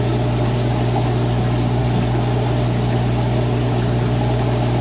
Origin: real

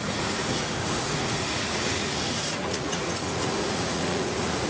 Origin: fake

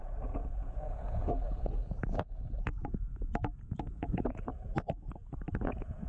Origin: fake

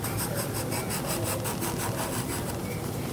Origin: real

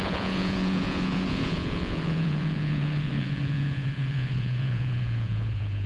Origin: fake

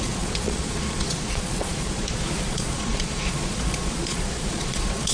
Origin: fake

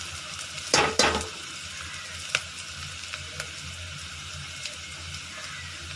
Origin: real